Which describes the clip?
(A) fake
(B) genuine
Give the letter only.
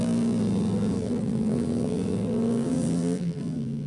A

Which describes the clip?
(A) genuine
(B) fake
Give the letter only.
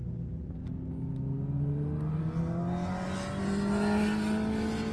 A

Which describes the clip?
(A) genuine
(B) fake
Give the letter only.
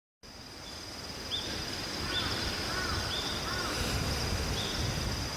A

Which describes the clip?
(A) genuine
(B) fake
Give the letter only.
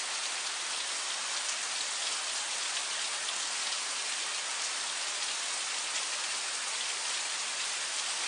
A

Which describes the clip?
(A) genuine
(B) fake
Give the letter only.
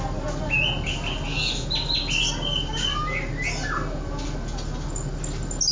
A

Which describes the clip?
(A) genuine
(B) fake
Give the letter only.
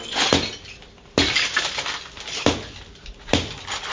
A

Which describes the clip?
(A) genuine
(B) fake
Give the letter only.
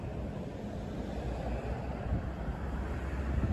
A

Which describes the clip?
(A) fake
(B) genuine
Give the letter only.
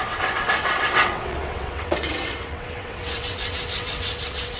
A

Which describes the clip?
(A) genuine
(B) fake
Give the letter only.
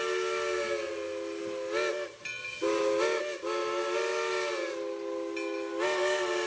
A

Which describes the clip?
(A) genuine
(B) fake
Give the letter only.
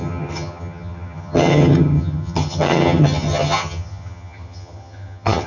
B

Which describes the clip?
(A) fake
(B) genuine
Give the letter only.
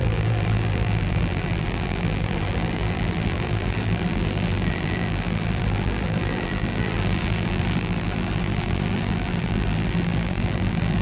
A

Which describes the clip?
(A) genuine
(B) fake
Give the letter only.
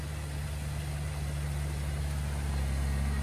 A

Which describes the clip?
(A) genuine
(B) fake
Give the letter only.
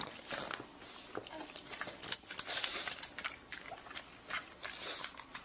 A